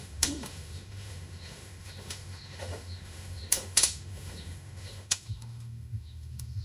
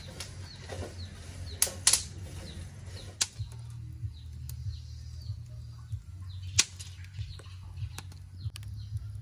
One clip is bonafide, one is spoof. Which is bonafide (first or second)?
second